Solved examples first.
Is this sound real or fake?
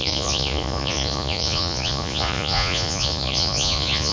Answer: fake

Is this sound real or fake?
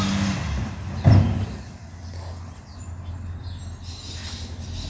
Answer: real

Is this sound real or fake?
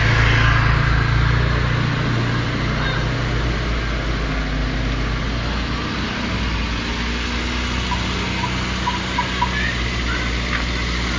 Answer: real